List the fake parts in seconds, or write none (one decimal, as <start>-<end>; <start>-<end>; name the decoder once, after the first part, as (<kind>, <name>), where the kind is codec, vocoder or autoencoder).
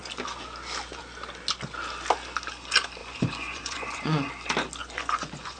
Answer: 3.0-4.3 (vocoder, Vocos); 4.8-5.6